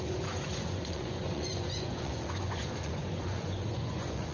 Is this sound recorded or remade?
remade